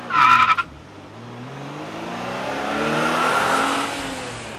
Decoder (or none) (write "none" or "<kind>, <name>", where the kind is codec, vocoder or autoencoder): none